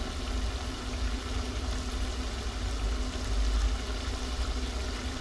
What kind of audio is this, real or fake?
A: real